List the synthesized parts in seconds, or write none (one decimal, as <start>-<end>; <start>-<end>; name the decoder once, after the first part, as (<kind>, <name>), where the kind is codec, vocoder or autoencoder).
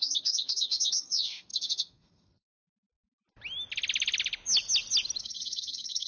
0.0-2.5 (codec, SNAC); 5.2-6.1